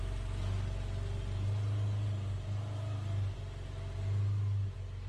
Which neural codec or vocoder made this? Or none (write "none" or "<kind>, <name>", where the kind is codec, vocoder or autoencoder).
none